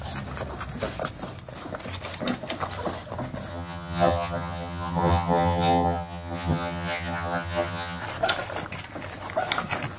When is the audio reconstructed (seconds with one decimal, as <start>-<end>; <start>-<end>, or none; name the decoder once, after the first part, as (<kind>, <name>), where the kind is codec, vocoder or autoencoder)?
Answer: 3.5-8.0 (vocoder, HiFi-GAN)

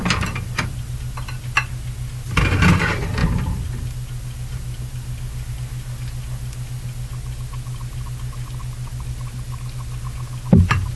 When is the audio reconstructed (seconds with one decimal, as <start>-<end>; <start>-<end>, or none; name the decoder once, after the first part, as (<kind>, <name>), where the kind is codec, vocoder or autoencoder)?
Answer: none